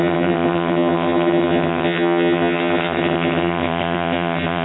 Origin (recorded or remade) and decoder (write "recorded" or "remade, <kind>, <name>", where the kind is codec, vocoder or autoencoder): remade, vocoder, HiFi-GAN